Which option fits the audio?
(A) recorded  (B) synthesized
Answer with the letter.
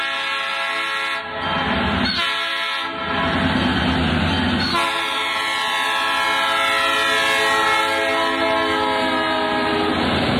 A